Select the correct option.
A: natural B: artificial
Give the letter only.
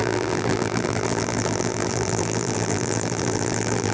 B